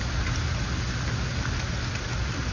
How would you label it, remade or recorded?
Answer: recorded